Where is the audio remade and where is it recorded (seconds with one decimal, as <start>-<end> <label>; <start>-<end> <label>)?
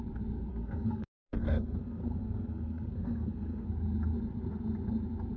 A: 0.0-0.5 recorded; 0.5-3.7 remade; 3.7-5.4 recorded